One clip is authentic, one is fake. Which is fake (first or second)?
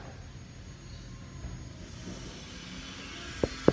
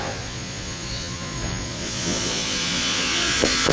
second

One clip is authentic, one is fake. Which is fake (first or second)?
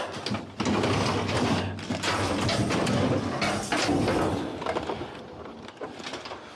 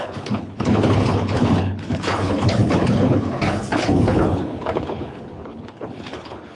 second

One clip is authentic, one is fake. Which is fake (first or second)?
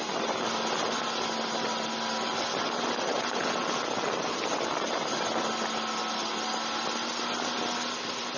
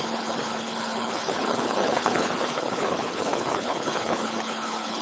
second